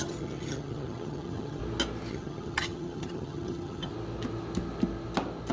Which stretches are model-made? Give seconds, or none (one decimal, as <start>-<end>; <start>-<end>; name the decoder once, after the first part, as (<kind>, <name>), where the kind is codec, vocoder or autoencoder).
0.0-1.6 (vocoder, HiFi-GAN); 2.1-3.9